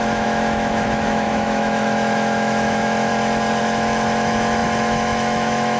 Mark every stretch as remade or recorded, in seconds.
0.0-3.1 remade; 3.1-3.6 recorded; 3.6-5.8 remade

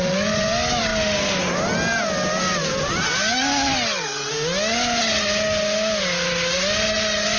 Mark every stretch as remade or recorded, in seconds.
0.0-7.4 recorded